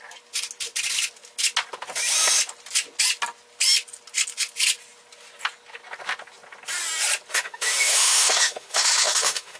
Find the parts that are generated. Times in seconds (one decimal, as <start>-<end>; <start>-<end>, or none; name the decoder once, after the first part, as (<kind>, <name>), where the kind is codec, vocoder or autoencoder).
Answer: 7.3-9.6 (autoencoder, DAC-VAE)

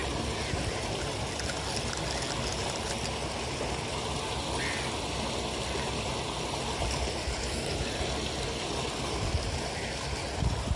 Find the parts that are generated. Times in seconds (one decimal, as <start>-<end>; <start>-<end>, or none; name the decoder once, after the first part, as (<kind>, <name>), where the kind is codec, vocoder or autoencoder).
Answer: none

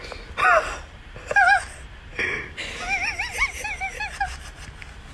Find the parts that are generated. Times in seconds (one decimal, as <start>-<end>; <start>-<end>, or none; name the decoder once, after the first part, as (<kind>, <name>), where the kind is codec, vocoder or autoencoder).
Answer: none

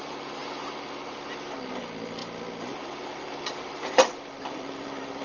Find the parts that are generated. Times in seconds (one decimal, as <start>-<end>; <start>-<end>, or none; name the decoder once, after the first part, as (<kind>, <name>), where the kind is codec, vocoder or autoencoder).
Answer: 0.0-0.4 (vocoder, BigVGAN v2); 1.8-5.2

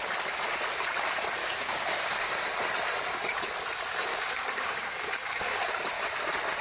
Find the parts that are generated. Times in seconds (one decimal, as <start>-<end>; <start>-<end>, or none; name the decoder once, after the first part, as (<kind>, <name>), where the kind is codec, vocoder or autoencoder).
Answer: 1.4-2.3 (codec, DAC); 4.1-5.7

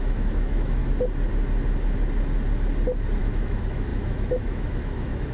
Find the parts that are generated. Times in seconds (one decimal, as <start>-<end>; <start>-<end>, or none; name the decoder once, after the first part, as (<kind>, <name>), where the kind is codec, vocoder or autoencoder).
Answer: 0.0-0.8 (autoencoder, DAC-VAE); 3.2-5.3

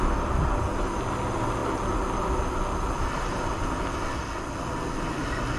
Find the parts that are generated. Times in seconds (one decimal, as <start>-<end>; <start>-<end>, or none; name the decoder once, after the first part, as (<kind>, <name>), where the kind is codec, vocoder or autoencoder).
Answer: none

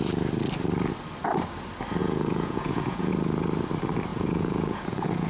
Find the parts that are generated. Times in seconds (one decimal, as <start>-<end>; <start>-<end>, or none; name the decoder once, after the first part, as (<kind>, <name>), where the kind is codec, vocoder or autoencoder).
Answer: 2.0-3.1 (vocoder, Vocos); 4.1-5.3